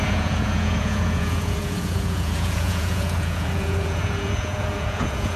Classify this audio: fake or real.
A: fake